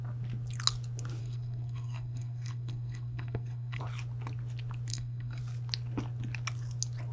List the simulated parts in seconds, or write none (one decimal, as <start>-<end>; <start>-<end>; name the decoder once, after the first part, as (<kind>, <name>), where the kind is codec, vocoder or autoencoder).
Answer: 1.2-3.8 (codec, SNAC); 4.9-5.4